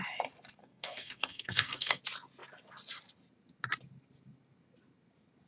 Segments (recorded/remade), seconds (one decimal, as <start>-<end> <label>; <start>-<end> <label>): 0.0-0.6 recorded; 0.6-2.0 remade; 2.0-5.5 recorded